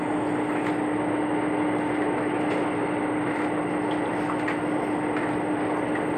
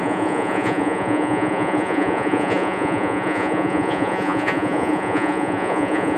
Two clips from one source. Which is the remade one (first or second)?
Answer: second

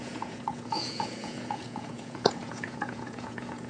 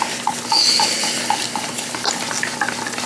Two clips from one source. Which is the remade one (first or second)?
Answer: first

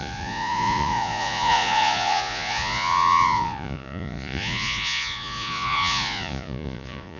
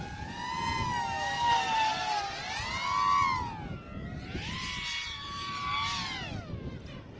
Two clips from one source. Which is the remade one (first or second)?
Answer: first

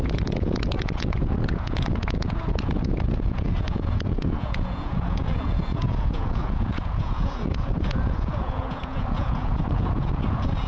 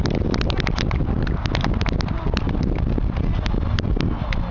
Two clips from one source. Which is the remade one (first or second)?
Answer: first